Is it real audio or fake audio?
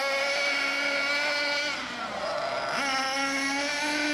real